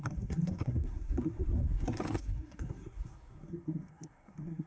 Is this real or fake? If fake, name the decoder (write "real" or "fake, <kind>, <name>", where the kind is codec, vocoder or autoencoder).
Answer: fake, codec, SNAC